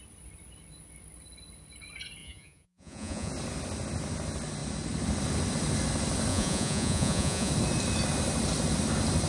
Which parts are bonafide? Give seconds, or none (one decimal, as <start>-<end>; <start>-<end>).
0.0-2.2; 3.3-6.3; 7.5-9.3